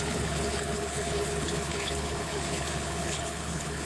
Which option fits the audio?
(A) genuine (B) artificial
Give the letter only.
B